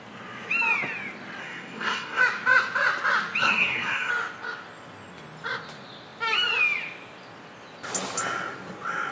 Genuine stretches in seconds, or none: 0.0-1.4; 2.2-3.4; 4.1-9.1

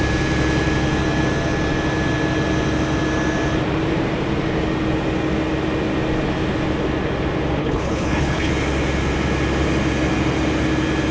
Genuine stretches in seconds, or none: 0.0-7.6; 8.5-11.1

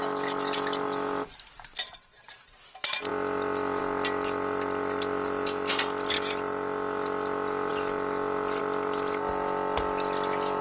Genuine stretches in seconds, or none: 0.0-10.6

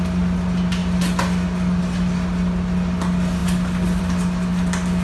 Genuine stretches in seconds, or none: 0.0-5.0

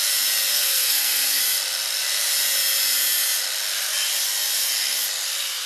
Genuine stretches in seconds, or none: 0.0-0.5; 1.4-5.7

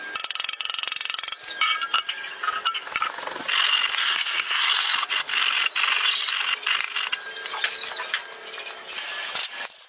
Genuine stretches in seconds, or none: 0.0-4.0; 4.7-9.9

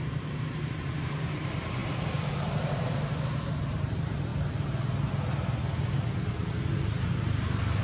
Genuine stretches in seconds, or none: 1.8-2.3; 4.3-7.8